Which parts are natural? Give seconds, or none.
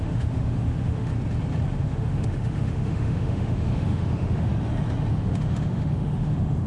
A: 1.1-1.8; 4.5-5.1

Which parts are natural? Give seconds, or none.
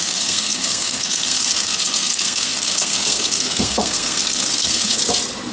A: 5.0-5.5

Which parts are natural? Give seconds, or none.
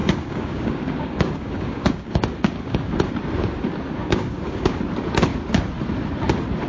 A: 3.1-4.0; 4.8-6.7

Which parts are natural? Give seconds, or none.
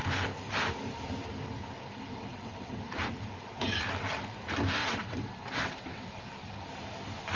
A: 0.0-2.3; 2.8-4.8; 6.1-7.4